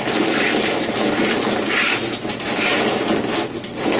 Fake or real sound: real